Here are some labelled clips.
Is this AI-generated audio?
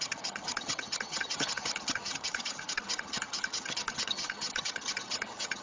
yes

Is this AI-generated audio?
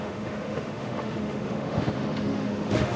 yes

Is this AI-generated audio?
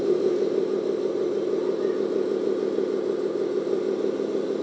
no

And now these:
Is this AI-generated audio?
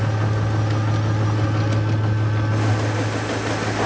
no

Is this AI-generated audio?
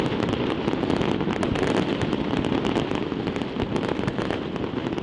no